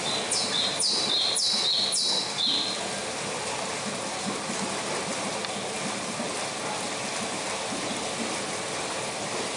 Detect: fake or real real